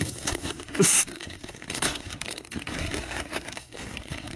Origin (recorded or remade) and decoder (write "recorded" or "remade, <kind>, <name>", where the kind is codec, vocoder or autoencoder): remade, codec, SNAC